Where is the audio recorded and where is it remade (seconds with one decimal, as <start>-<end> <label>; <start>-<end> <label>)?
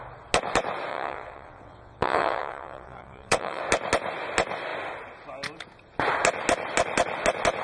0.0-0.9 recorded; 0.9-3.6 remade; 3.6-7.6 recorded